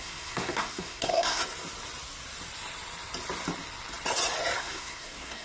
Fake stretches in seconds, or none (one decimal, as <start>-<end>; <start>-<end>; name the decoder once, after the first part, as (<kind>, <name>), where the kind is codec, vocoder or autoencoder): 0.0-1.4 (codec, SNAC); 4.6-5.4